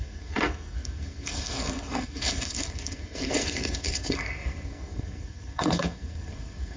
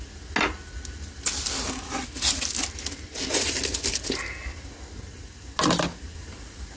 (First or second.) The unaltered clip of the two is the second